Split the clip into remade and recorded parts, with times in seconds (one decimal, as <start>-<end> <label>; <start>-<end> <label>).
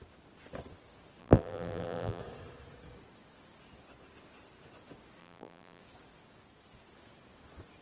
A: 0.0-1.2 recorded; 1.2-2.2 remade; 2.2-5.2 recorded; 5.2-5.8 remade; 5.8-7.8 recorded